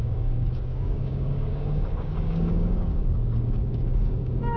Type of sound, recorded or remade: remade